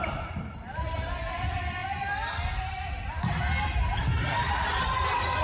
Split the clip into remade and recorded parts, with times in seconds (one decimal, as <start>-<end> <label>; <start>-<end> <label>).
0.0-5.4 recorded